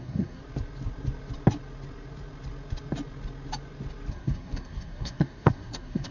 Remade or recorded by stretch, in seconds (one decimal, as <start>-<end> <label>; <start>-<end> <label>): 0.0-0.4 remade; 0.4-4.1 recorded; 4.1-6.1 remade